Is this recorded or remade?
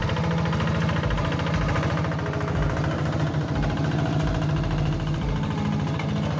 recorded